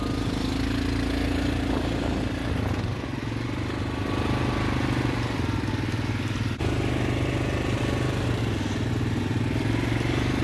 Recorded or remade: recorded